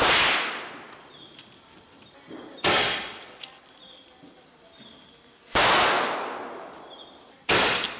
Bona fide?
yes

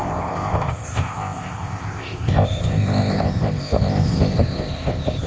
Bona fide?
no